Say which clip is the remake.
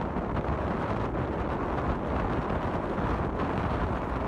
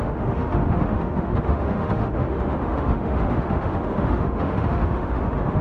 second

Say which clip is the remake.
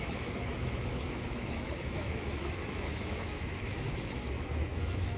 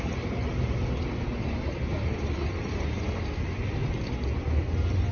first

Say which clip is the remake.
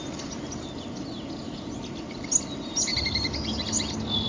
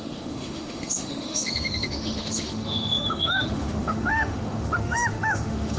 second